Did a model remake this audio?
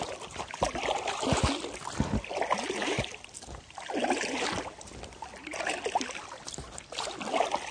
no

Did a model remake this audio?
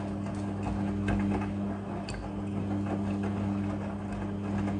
no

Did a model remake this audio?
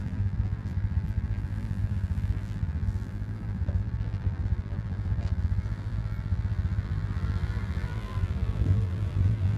yes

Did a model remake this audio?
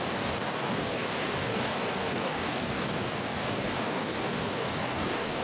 yes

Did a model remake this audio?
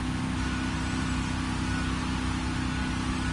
no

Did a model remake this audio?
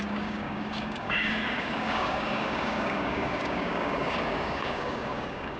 yes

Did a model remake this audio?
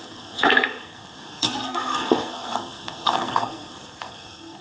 yes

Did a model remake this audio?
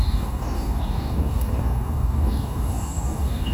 yes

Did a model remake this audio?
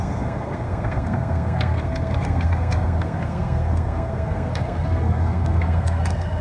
yes